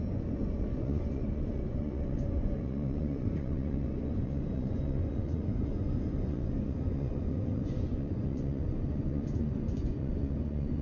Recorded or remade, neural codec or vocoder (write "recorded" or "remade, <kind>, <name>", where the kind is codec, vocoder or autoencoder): remade, vocoder, Vocos